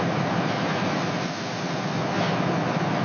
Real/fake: real